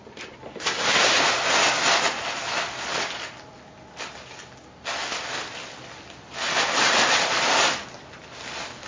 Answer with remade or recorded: recorded